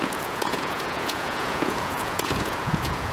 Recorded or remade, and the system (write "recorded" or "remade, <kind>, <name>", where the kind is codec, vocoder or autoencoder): remade, vocoder, Vocos